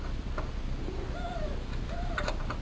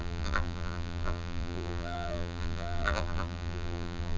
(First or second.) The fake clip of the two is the second